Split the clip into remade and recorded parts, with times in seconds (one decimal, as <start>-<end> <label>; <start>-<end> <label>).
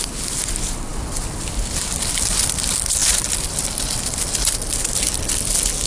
0.0-3.0 recorded; 3.0-4.0 remade; 4.0-5.9 recorded